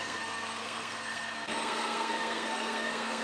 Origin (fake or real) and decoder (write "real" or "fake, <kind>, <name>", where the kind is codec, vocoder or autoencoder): fake, codec, SNAC